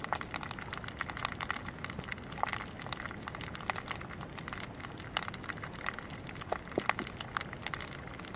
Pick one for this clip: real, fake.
real